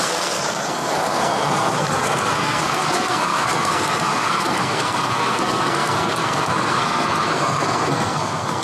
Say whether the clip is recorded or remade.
remade